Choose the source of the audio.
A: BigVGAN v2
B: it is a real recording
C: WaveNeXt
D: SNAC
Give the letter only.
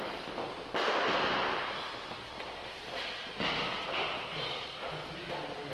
B